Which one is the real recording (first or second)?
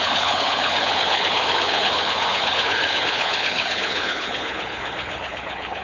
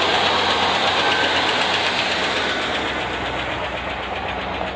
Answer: second